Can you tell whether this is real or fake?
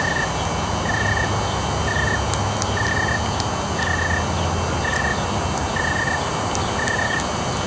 real